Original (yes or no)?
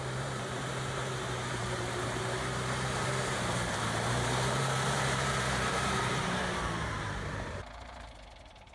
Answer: no